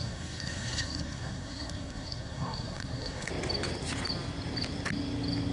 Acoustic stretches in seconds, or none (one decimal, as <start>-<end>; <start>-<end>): 3.3-5.5